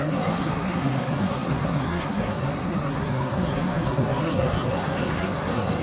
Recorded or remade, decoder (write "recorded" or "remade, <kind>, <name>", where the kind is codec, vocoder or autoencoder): remade, codec, SNAC